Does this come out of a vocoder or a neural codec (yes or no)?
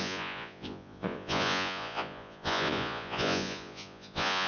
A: yes